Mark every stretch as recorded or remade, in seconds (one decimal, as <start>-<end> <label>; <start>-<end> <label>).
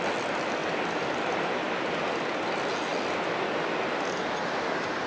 0.0-5.1 recorded